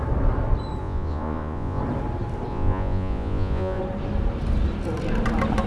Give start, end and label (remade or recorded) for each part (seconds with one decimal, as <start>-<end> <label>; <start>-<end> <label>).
0.0-0.8 recorded; 0.8-1.8 remade; 1.8-2.5 recorded; 2.5-3.8 remade; 3.8-5.7 recorded